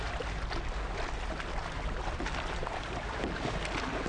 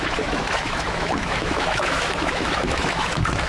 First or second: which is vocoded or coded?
second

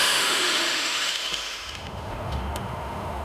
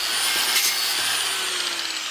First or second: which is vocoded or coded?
first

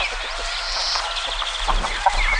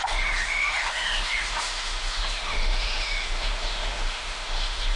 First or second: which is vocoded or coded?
second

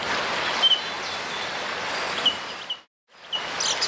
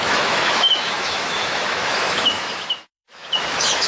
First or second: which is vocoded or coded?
second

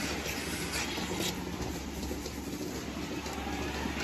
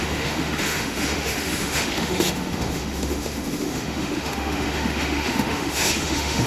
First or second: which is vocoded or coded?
second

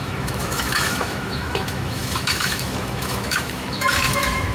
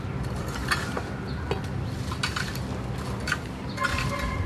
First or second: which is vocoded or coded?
first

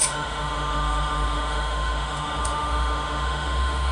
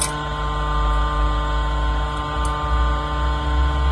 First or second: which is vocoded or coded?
first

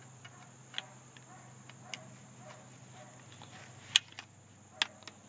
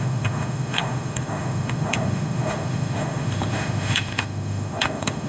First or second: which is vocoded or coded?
second